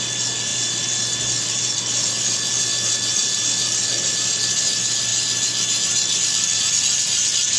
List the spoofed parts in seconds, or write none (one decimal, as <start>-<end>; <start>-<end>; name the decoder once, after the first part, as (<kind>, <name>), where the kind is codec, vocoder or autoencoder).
none